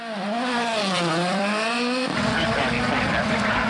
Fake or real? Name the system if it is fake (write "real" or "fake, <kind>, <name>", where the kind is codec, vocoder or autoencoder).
fake, vocoder, BigVGAN v2